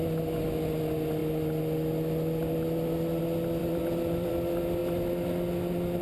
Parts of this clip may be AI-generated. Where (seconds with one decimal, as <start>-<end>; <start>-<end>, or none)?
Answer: 3.6-4.3